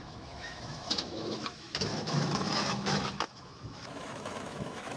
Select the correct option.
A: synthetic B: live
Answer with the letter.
A